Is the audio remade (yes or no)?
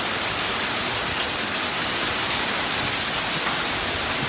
no